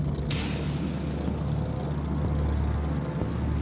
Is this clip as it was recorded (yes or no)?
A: yes